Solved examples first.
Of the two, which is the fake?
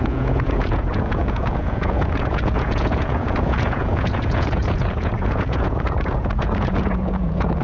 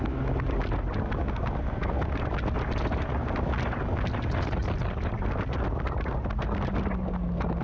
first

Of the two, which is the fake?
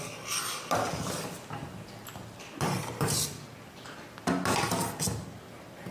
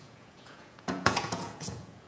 second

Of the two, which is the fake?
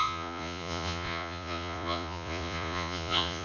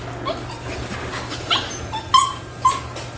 first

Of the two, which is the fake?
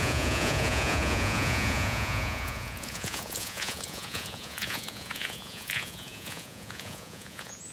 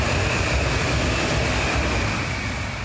first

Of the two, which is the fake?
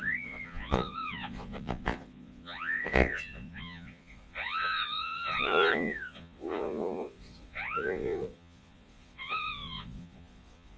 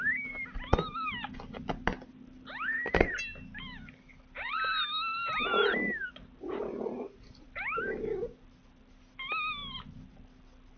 first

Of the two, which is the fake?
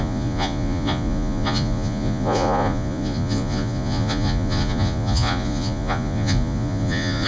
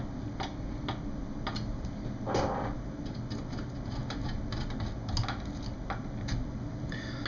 first